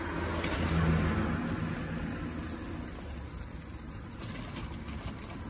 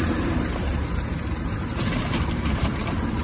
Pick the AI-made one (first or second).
second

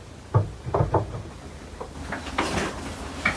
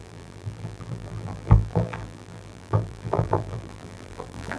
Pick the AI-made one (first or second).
second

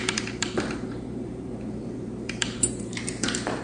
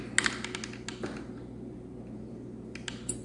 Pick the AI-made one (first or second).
first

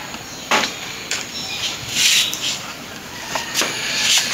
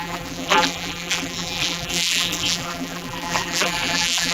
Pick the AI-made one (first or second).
second